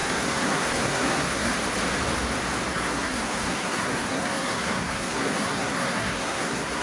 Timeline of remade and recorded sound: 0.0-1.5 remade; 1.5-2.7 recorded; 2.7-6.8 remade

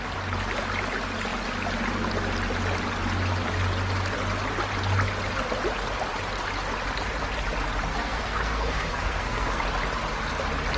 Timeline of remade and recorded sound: 0.0-7.9 recorded; 7.9-9.6 remade; 9.6-10.8 recorded

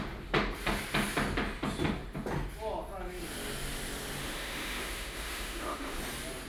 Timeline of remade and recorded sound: 0.0-4.2 recorded; 4.2-6.0 remade; 6.0-6.5 recorded

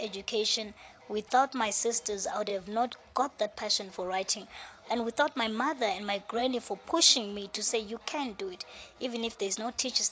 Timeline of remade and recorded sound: 0.0-2.5 recorded; 2.5-4.9 remade; 4.9-9.0 recorded; 9.0-10.1 remade

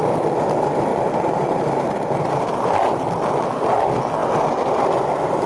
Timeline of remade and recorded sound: 0.0-0.9 recorded; 0.9-2.7 remade; 2.7-5.5 recorded

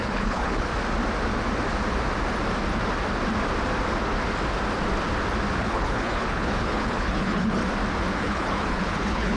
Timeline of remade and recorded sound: 0.0-0.7 remade; 0.7-5.6 recorded; 5.6-7.6 remade; 7.6-8.2 recorded; 8.2-9.4 remade